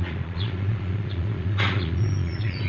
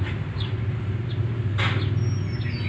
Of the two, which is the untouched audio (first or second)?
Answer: second